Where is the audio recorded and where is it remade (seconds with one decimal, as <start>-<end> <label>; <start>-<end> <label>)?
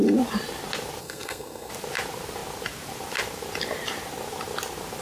0.0-1.0 recorded; 1.0-1.7 remade; 1.7-5.0 recorded